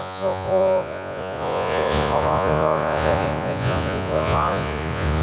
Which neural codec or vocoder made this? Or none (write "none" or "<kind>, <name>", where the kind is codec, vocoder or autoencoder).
vocoder, Vocos